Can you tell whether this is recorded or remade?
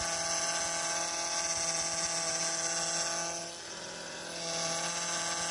recorded